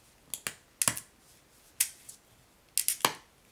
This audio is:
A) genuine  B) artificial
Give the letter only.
A